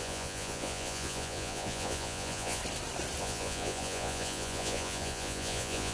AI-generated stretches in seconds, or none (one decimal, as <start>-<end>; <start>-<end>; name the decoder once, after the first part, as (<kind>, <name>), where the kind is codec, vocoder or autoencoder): 0.0-2.6 (vocoder, Vocos); 3.2-5.9